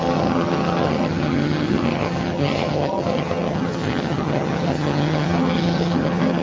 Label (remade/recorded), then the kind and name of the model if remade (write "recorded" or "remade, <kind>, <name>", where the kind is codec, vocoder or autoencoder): remade, vocoder, HiFi-GAN